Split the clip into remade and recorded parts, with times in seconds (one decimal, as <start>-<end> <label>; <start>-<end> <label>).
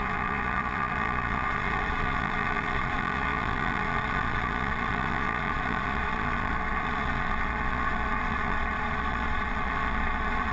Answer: 0.0-10.5 remade